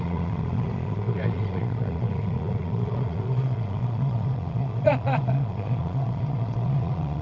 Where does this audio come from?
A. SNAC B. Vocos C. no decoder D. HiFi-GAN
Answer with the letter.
B